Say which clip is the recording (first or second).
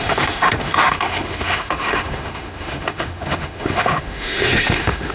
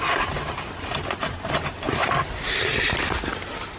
second